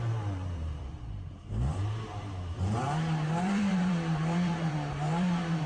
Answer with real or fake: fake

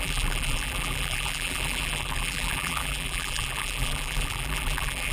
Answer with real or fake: fake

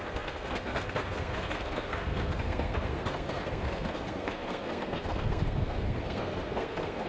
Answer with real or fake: fake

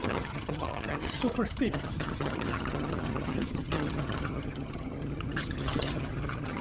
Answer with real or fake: fake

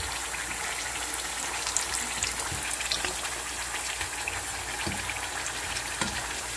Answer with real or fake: real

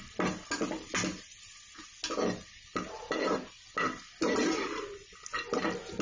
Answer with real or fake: real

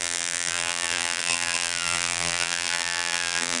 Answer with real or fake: fake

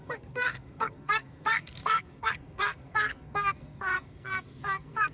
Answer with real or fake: fake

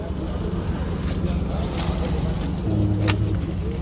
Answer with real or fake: real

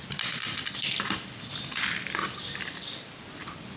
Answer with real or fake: real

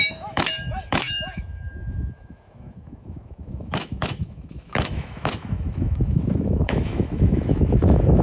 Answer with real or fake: fake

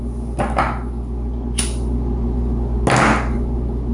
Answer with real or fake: real